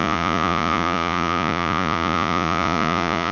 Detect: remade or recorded remade